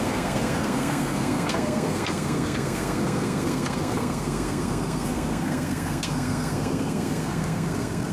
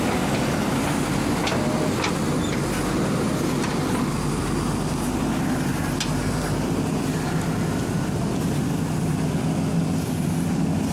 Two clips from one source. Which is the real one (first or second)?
second